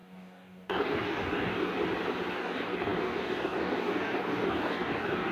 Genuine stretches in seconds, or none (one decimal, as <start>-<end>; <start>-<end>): 1.7-2.3